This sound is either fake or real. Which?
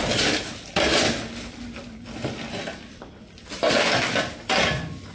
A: real